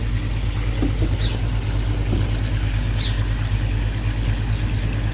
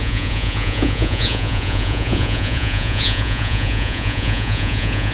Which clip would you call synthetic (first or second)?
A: second